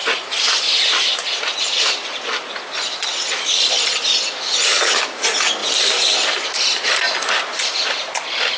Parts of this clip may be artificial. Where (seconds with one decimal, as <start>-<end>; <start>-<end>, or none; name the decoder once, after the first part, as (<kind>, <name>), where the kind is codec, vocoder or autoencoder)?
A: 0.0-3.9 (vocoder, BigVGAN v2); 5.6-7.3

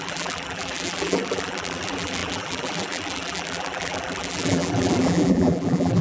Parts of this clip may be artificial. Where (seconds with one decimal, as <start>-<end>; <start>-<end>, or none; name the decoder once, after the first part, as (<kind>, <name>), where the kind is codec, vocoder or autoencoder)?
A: 0.0-6.0 (vocoder, BigVGAN v2)

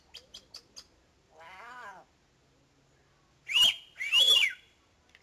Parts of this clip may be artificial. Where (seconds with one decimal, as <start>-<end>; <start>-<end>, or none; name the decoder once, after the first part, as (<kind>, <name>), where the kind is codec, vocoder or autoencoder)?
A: none

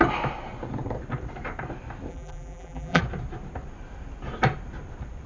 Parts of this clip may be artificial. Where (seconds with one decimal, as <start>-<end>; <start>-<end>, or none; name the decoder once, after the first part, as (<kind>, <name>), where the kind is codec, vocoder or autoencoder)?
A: 2.1-3.0 (vocoder, BigVGAN v2)